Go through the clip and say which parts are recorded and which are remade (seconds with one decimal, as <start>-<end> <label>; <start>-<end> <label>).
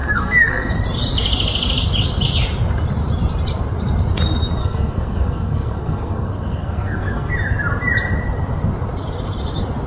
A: 0.0-0.7 remade; 0.7-4.6 recorded; 4.6-7.3 remade; 7.3-9.9 recorded